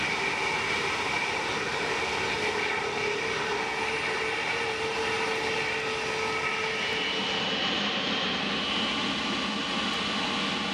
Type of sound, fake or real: real